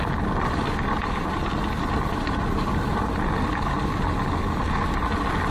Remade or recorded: recorded